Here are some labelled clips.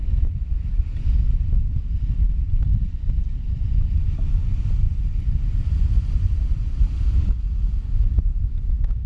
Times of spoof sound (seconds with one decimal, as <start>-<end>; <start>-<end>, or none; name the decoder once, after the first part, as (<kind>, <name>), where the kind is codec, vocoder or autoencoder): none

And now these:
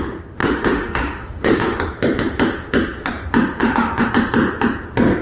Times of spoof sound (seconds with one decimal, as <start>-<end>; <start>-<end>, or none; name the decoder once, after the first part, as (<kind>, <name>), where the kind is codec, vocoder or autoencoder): 0.4-1.8 (autoencoder, DAC-VAE); 3.6-4.1

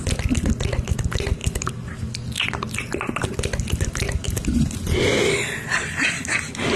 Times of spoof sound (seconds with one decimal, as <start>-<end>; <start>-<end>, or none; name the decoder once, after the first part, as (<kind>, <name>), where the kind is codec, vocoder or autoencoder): none

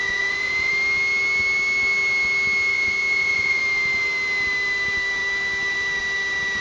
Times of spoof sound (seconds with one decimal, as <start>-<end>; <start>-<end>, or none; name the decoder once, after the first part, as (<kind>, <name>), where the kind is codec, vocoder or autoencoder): 0.0-0.7 (vocoder, Vocos); 2.7-3.6

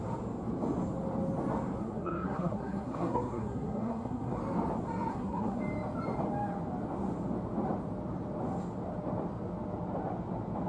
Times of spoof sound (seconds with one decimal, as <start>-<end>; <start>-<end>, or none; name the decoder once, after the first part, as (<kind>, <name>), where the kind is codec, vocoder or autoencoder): 1.8-4.4 (codec, SNAC); 5.1-5.6